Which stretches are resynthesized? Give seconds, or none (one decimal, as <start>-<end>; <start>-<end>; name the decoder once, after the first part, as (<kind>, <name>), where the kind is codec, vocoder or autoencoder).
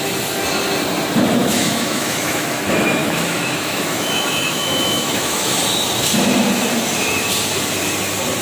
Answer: 1.4-2.6 (autoencoder, DAC-VAE); 3.0-5.5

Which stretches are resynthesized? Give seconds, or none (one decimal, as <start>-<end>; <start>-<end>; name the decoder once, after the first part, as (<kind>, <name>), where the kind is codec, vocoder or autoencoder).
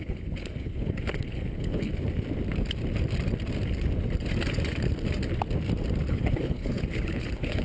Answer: 0.0-1.9 (codec, HILCodec); 6.1-7.6